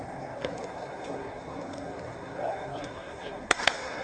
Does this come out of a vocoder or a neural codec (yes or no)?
yes